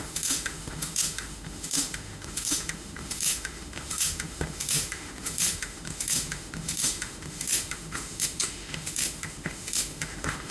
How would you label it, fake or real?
fake